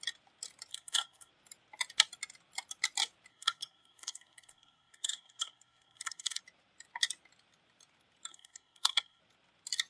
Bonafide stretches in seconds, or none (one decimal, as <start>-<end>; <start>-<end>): 0.0-0.7; 1.3-3.3; 6.4-8.3; 9.2-9.9